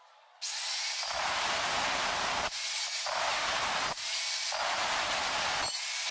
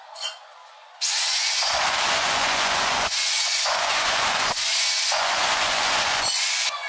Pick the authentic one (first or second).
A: first